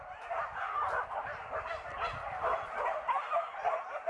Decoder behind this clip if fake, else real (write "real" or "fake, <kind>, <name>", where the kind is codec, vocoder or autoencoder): real